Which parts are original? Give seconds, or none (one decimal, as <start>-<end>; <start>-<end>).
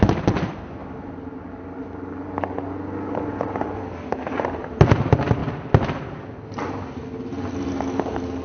0.0-8.4